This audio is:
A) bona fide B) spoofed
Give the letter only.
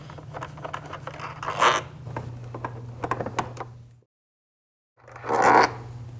A